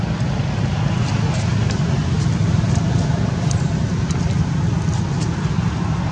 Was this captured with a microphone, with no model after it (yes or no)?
yes